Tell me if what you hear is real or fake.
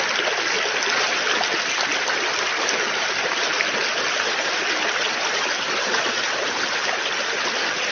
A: real